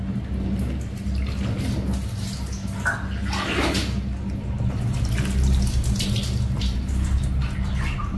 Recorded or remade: recorded